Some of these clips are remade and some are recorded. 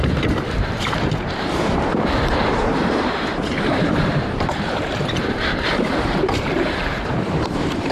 remade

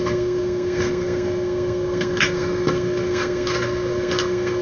remade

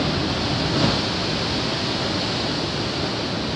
recorded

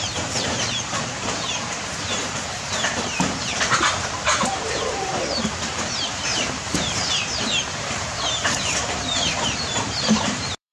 remade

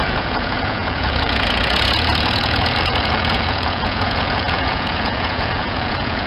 remade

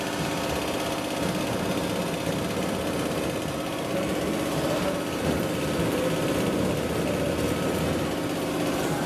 recorded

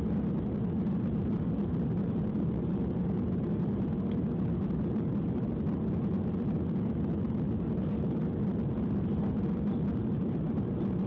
remade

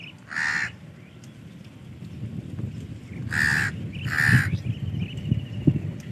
recorded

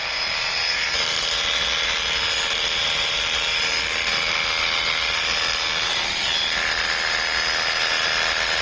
recorded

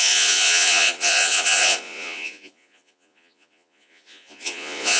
remade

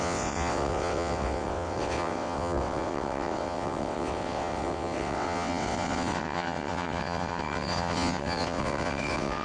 remade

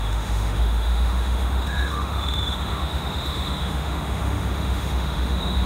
remade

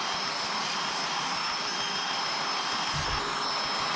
recorded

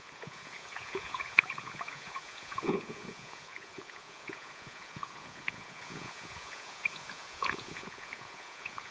remade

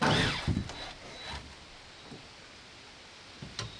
recorded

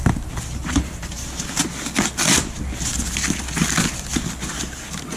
recorded